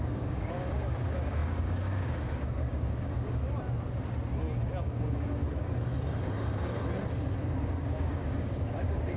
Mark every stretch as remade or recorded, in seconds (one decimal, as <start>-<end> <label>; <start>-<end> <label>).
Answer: 0.0-3.4 remade; 3.4-4.8 recorded; 4.8-5.4 remade; 5.4-7.8 recorded; 7.8-9.2 remade